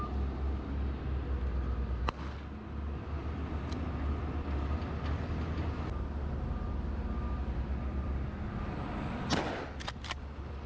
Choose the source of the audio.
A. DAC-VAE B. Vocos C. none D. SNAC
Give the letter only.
C